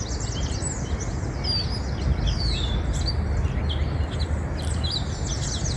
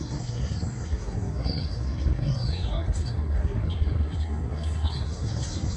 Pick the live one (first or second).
first